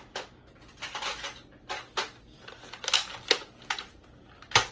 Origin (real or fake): real